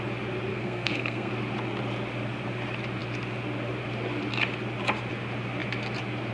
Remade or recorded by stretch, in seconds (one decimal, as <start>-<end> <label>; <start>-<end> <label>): 0.0-0.5 recorded; 0.5-1.3 remade; 1.3-6.3 recorded